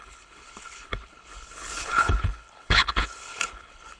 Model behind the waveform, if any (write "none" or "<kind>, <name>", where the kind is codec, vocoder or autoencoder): codec, HILCodec